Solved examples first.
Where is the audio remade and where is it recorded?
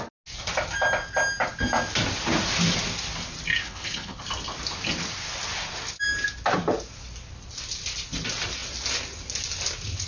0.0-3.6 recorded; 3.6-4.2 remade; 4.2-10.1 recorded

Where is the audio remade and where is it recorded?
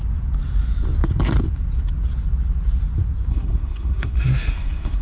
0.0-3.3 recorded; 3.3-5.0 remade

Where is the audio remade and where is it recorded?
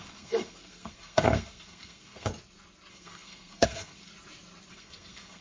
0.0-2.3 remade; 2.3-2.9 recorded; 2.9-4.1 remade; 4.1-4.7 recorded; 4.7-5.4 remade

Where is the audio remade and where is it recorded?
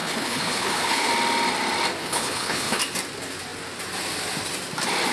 0.0-1.1 remade; 1.1-2.0 recorded; 2.0-2.8 remade; 2.8-5.1 recorded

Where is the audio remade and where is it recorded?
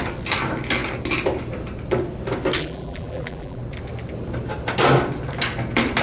0.0-2.6 recorded; 2.6-3.6 remade; 3.6-6.0 recorded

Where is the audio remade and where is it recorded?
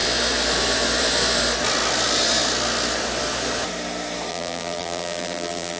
0.0-4.3 recorded; 4.3-5.8 remade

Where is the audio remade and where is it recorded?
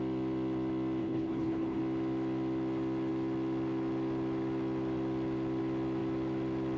0.0-1.0 recorded; 1.0-1.8 remade; 1.8-6.8 recorded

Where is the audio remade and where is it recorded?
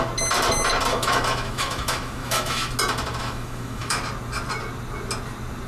0.0-0.9 recorded; 0.9-2.7 remade; 2.7-3.2 recorded; 3.2-4.0 remade; 4.0-5.7 recorded